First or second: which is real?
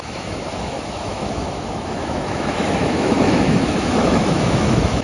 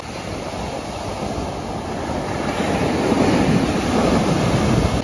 second